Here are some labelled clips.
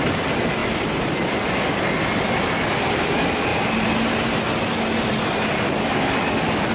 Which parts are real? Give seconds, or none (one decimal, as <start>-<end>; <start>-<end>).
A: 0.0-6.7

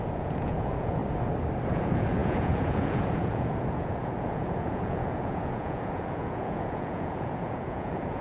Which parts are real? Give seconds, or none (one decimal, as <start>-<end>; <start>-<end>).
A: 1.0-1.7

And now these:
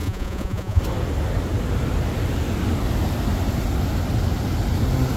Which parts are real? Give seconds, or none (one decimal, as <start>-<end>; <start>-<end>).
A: 0.8-5.2